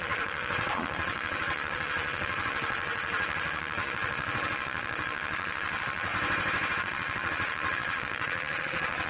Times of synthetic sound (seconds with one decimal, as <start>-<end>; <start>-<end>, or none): 0.0-6.1; 6.8-9.1